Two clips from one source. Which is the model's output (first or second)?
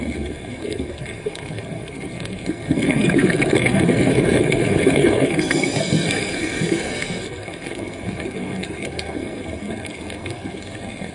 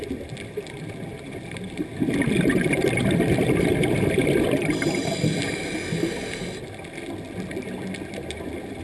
first